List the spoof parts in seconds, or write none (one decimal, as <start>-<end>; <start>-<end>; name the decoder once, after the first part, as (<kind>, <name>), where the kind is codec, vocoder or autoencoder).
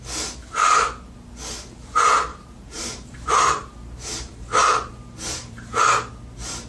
2.3-5.8 (vocoder, BigVGAN v2)